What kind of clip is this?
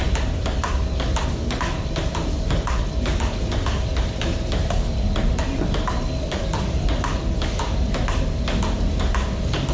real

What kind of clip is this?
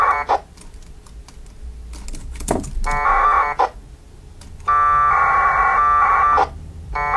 real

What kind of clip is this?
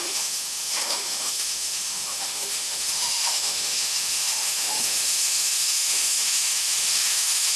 fake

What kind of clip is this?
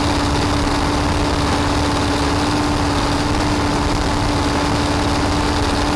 real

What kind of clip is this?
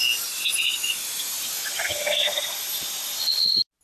real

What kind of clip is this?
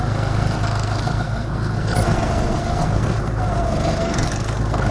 fake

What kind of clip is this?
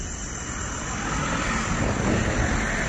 real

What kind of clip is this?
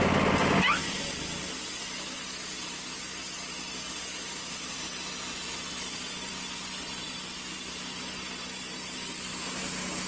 real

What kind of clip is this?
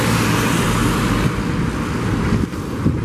real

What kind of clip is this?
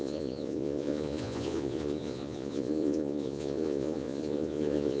fake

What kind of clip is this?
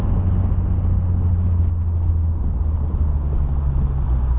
real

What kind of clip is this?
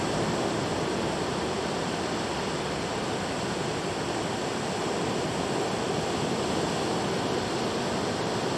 real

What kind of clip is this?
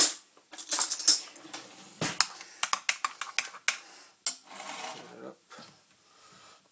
real